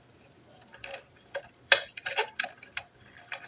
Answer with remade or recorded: remade